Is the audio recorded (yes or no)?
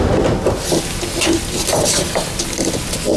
yes